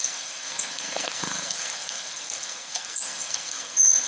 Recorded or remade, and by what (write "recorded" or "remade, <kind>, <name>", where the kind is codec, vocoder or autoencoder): remade, codec, SNAC